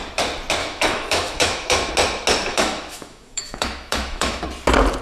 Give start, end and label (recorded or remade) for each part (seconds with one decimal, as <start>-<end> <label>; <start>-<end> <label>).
0.0-0.6 recorded; 0.6-1.9 remade; 1.9-2.5 recorded; 2.5-4.4 remade; 4.4-5.0 recorded